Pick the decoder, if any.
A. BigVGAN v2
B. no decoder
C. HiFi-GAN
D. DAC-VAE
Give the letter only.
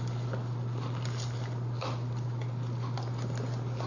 B